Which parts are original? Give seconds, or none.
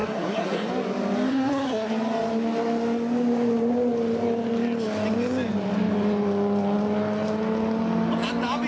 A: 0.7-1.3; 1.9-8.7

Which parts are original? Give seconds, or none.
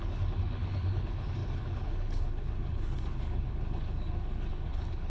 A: none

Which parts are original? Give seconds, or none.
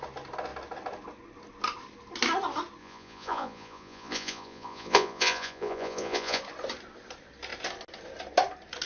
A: 0.0-2.8; 6.4-8.9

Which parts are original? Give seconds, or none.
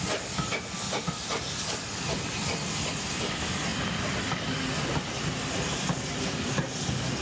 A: 0.0-7.2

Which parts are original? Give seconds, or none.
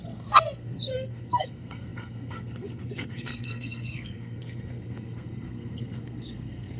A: none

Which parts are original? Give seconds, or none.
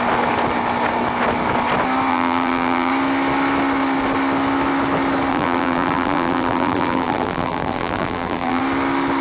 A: 0.0-2.1; 2.9-5.3; 8.6-9.2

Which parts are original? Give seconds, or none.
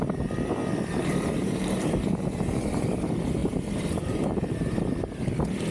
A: 0.0-1.4; 2.9-3.4; 4.4-5.7